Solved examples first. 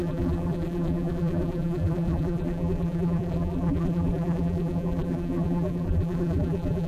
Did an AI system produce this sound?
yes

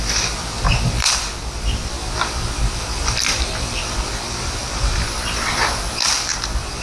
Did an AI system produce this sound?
yes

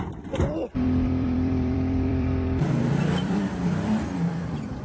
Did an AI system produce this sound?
yes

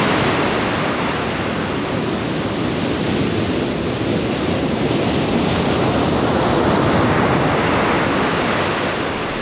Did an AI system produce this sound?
no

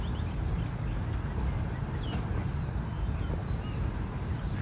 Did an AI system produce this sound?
no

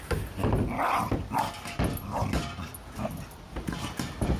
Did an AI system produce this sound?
no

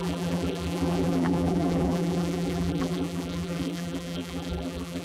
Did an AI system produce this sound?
yes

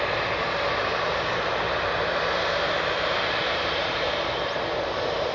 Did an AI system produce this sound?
yes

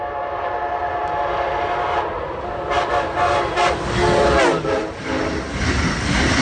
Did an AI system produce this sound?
no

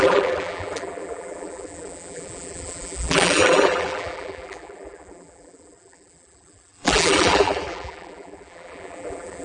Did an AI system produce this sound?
yes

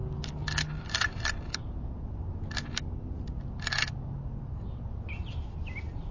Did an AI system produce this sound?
no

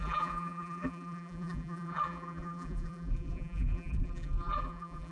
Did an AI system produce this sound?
yes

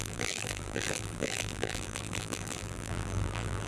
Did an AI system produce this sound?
yes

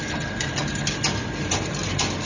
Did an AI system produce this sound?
yes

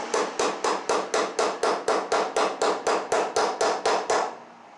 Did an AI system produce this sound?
no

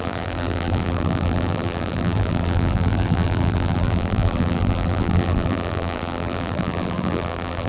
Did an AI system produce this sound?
yes